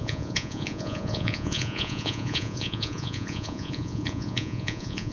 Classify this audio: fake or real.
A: fake